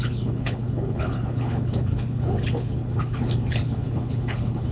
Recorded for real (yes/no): no